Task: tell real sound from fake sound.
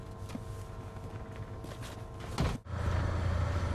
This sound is real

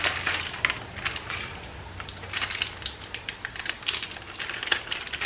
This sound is fake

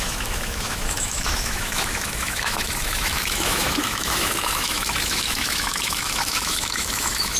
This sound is fake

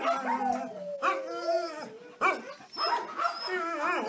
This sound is real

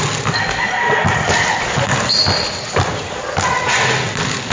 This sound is real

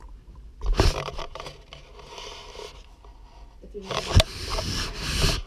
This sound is real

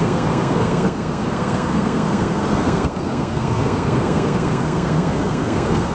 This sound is fake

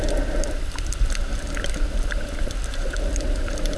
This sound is real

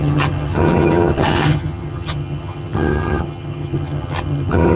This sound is fake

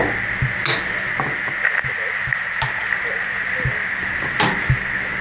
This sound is real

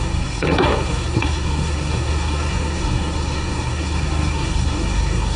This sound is fake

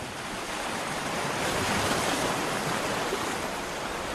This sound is fake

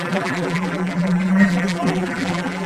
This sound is fake